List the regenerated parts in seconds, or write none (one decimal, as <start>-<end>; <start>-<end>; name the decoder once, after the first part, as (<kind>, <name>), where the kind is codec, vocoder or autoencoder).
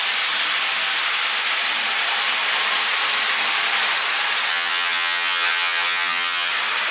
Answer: 4.5-6.5 (vocoder, HiFi-GAN)